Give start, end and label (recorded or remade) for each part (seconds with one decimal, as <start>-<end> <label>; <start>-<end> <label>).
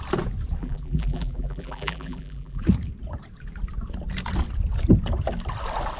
0.0-0.6 recorded; 0.6-2.6 remade; 2.6-6.0 recorded